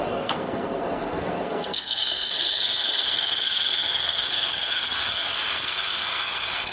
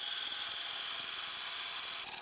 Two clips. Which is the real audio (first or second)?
second